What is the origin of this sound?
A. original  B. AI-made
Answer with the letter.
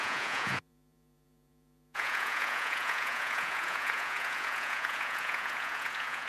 B